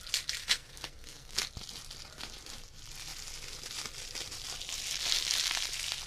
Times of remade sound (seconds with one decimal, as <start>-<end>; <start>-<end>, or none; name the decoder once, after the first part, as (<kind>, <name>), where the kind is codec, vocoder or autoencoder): 0.4-1.4 (codec, SNAC)